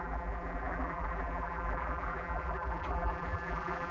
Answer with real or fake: fake